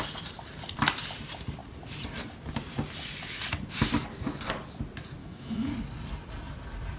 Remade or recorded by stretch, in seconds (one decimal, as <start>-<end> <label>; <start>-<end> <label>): 0.0-5.2 recorded; 5.2-5.7 remade; 5.7-7.0 recorded